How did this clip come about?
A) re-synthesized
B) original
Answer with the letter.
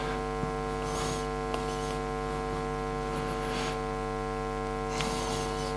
B